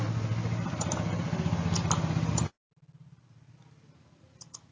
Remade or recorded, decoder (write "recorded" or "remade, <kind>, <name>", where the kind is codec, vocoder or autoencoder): recorded